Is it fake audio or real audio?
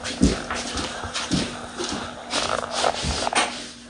real